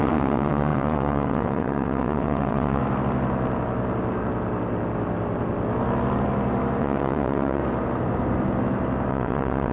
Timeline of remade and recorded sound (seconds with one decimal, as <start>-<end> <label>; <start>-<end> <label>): 0.0-2.8 remade; 2.8-6.8 recorded; 6.8-7.6 remade; 7.6-9.1 recorded; 9.1-9.7 remade

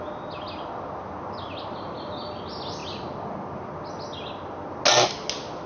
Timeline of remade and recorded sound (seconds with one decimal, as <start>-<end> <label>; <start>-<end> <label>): 0.0-5.7 recorded

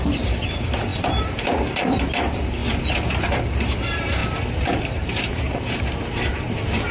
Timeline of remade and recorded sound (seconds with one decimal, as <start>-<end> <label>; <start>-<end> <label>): 0.0-2.6 remade; 2.6-3.4 recorded; 3.4-4.2 remade; 4.2-4.8 recorded; 4.8-6.9 remade

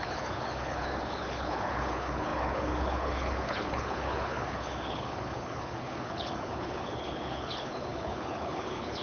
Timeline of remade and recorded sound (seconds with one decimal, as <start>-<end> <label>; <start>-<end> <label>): 0.0-9.0 remade

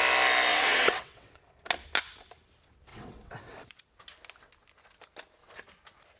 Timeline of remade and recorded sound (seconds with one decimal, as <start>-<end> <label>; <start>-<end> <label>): 0.0-0.5 recorded; 0.5-1.6 remade; 1.6-2.9 recorded; 2.9-3.8 remade; 3.8-6.2 recorded

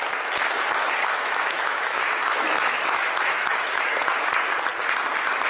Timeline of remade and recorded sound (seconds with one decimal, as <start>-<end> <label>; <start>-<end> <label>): 0.0-1.0 recorded; 1.0-4.3 remade; 4.3-5.5 recorded

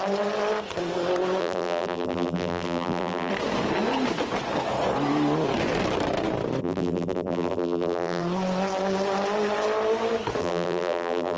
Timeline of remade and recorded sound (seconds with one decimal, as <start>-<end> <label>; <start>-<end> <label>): 0.0-1.4 recorded; 1.4-3.3 remade; 3.3-6.6 recorded; 6.6-8.2 remade; 8.2-10.4 recorded; 10.4-11.4 remade